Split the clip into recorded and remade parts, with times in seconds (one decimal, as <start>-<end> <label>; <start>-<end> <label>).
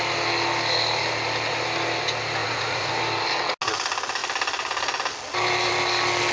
0.0-2.4 recorded; 2.4-2.9 remade; 2.9-6.3 recorded